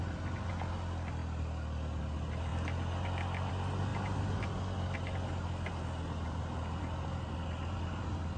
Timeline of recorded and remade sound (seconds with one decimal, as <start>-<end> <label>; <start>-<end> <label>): 0.0-8.4 recorded